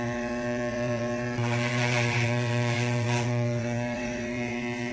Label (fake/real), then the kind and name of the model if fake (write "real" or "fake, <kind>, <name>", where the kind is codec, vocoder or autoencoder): fake, vocoder, WaveNeXt